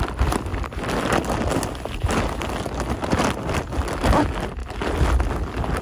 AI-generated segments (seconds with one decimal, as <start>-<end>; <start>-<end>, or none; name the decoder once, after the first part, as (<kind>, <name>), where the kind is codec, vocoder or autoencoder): none